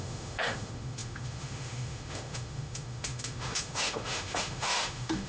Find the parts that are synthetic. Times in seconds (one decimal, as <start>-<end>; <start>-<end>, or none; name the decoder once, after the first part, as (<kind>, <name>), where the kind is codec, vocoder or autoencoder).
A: 0.0-5.3 (autoencoder, DAC-VAE)

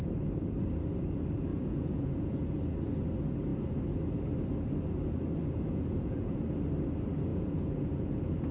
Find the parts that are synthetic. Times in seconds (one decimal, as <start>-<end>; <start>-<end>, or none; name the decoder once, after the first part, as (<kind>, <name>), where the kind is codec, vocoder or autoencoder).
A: 1.5-2.4 (vocoder, Vocos); 5.4-6.4; 7.3-8.5